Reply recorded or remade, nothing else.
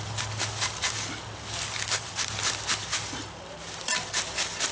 recorded